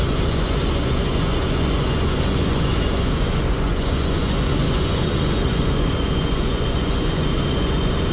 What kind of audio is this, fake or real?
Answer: fake